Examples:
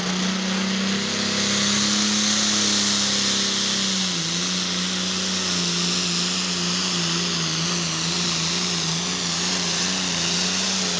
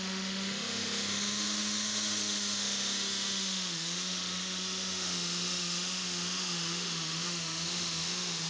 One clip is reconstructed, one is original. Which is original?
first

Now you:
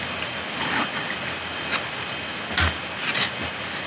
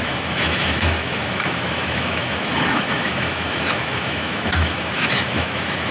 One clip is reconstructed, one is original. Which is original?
first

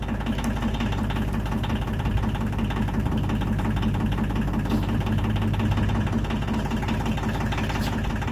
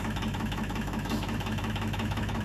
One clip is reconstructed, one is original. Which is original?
first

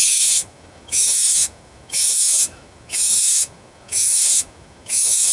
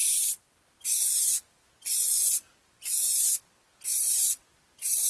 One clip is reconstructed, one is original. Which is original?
second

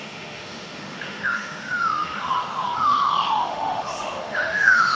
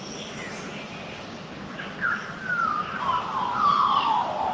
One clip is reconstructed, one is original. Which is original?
second